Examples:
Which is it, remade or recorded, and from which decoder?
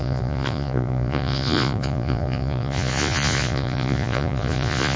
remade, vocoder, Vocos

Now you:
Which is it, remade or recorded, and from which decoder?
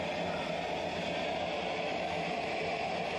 recorded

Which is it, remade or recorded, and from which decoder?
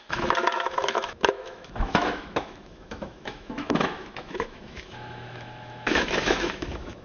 remade, autoencoder, DAC-VAE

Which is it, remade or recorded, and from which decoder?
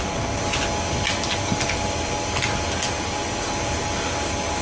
recorded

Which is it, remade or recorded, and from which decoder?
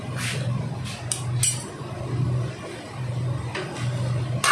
recorded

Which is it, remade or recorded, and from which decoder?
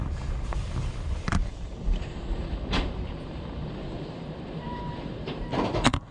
remade, vocoder, BigVGAN v2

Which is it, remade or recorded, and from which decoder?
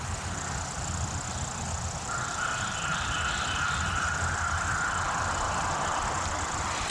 recorded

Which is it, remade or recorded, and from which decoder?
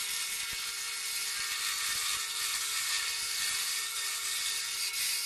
recorded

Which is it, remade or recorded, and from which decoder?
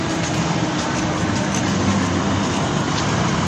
recorded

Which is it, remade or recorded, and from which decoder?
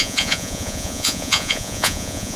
remade, vocoder, Vocos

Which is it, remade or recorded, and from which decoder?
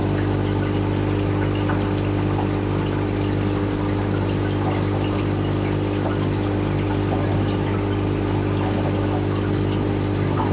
recorded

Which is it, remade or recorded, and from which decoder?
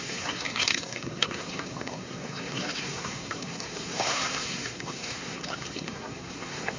remade, codec, SNAC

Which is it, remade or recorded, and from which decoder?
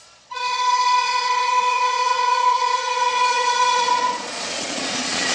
remade, vocoder, Vocos